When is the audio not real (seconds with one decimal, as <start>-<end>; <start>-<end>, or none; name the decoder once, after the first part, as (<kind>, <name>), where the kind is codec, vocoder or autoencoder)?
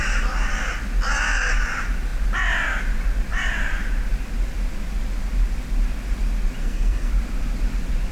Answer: 6.6-7.1 (codec, SNAC)